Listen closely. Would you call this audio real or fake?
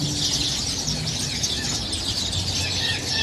real